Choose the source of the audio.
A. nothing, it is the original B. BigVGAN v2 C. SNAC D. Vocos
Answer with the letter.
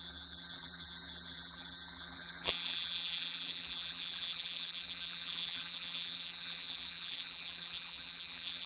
B